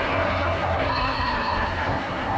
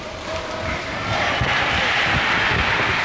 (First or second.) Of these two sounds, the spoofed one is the first